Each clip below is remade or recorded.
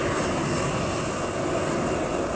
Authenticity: recorded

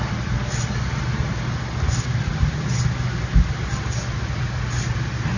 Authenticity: recorded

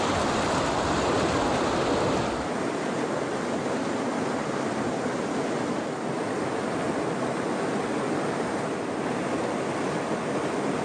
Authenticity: recorded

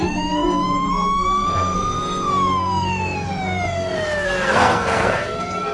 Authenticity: remade